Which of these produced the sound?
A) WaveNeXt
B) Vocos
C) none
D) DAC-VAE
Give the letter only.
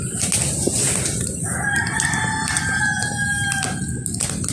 C